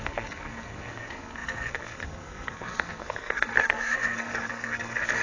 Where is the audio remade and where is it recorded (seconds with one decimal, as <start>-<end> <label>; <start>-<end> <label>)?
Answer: 0.0-5.2 remade